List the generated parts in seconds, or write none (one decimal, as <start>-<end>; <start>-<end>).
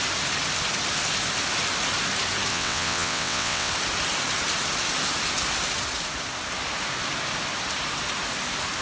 2.5-3.7